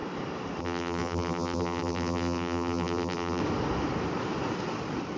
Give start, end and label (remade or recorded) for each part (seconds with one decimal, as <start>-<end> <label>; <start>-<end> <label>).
0.0-0.6 recorded; 0.6-3.4 remade; 3.4-5.2 recorded